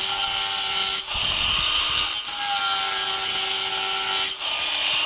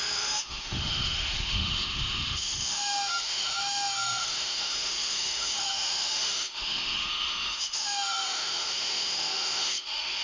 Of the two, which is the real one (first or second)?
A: first